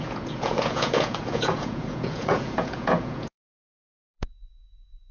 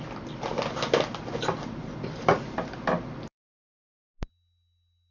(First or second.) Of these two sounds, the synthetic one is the first